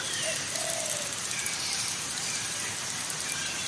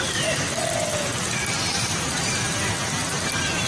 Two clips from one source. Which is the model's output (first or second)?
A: first